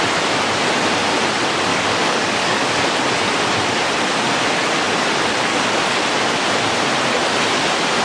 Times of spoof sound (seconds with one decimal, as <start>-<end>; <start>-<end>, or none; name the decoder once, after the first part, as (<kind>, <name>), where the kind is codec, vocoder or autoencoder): 1.7-2.8 (codec, DAC); 5.5-6.0